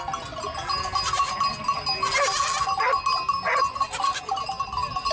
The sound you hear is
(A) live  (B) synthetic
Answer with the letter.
A